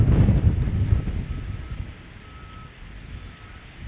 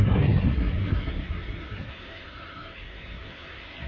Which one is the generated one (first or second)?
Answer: second